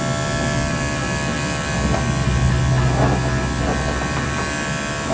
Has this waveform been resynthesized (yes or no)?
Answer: no